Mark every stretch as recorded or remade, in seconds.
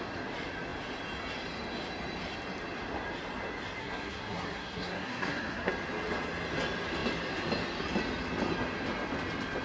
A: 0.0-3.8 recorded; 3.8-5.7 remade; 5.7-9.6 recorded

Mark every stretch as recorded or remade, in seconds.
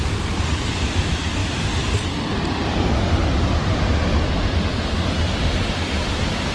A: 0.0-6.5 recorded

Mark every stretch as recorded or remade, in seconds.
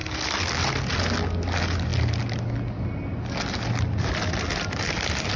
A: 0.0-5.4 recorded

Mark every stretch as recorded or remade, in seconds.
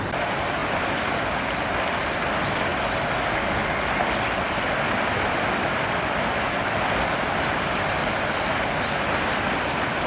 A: 0.0-0.6 remade; 0.6-1.3 recorded; 1.3-2.7 remade; 2.7-5.6 recorded; 5.6-8.0 remade; 8.0-9.3 recorded; 9.3-10.1 remade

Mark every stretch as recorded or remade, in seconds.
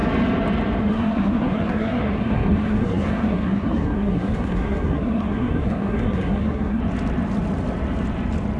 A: 0.0-0.8 recorded; 0.8-6.8 remade; 6.8-8.6 recorded